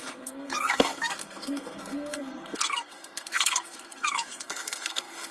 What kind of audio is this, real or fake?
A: fake